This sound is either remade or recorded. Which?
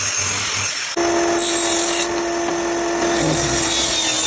recorded